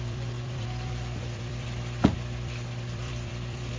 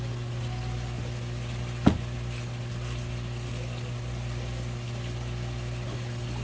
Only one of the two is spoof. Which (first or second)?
first